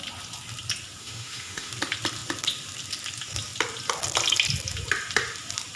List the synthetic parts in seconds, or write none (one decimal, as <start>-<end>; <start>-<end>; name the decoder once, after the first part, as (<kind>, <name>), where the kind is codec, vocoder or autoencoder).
1.0-1.7 (autoencoder, DAC-VAE)